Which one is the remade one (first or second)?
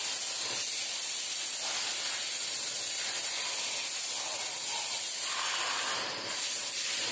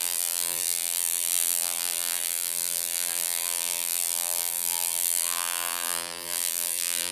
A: second